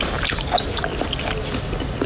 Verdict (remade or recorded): recorded